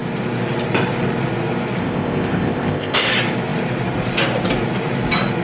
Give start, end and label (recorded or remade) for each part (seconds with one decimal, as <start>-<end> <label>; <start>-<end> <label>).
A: 0.0-1.8 recorded; 1.8-3.1 remade; 3.1-5.4 recorded